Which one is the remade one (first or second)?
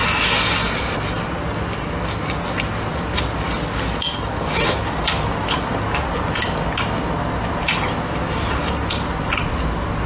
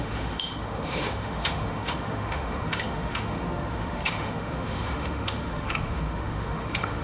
second